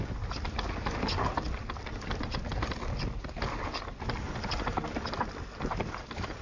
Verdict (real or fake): real